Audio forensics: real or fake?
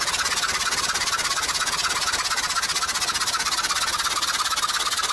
real